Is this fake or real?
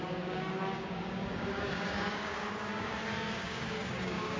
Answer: fake